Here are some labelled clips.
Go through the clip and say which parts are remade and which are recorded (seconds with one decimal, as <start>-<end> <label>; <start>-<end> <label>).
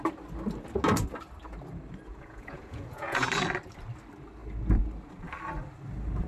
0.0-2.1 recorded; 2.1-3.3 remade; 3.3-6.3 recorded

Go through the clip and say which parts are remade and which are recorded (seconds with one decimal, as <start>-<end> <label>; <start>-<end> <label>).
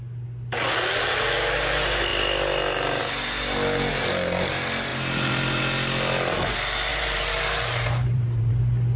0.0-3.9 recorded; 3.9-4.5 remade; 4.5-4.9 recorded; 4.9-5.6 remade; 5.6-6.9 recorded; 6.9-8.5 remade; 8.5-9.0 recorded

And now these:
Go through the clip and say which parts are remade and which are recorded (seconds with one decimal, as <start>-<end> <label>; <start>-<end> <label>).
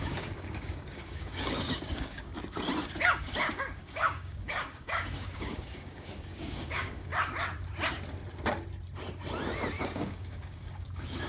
0.0-2.3 remade; 2.3-3.2 recorded; 3.2-7.1 remade; 7.1-9.8 recorded; 9.8-11.3 remade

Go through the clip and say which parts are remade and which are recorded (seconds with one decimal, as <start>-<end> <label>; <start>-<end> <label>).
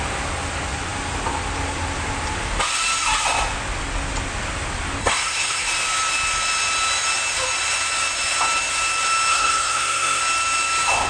0.0-5.0 recorded; 5.0-5.7 remade; 5.7-9.3 recorded; 9.3-10.2 remade; 10.2-11.1 recorded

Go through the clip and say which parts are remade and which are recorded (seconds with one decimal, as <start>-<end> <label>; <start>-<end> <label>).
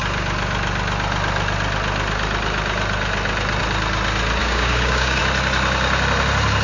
0.0-4.4 recorded; 4.4-5.2 remade; 5.2-6.6 recorded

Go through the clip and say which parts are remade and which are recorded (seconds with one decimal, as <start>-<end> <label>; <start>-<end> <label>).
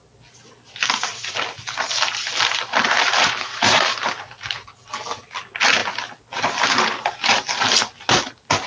0.0-8.7 recorded